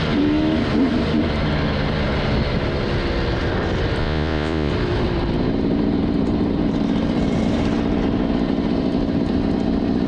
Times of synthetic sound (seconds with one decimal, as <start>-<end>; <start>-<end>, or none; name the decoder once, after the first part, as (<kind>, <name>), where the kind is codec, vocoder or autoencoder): 4.0-4.7 (vocoder, Vocos)